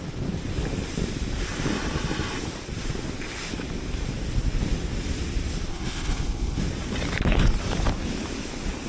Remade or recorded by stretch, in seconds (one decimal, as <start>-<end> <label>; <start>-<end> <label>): 0.0-5.7 recorded; 5.7-6.6 remade; 6.6-8.9 recorded